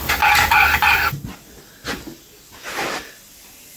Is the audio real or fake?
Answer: real